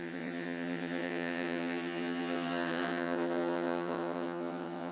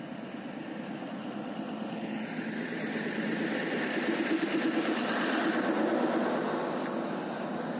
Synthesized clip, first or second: first